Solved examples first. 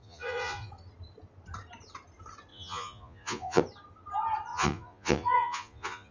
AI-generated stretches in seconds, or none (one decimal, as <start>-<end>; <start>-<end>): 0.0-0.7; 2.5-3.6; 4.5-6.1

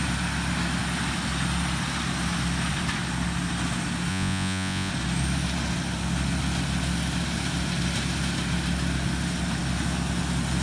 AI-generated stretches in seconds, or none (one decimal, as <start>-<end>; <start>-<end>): 4.1-4.9

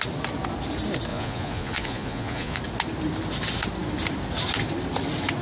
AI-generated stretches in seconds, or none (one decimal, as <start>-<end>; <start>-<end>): 1.1-2.6